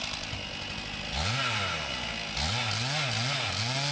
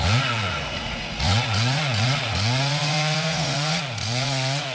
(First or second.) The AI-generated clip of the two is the second